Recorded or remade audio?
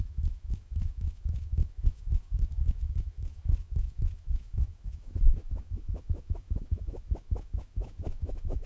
remade